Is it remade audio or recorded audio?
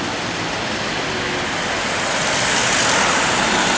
recorded